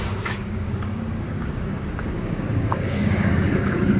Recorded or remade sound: remade